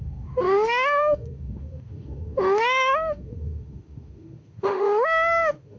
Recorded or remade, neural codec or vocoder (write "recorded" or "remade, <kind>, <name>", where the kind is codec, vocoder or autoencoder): remade, autoencoder, DAC-VAE